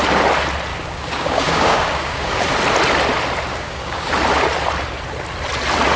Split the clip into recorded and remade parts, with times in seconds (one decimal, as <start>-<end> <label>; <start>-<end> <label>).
0.0-0.7 recorded; 0.7-2.4 remade; 2.4-3.5 recorded; 3.5-4.1 remade; 4.1-6.0 recorded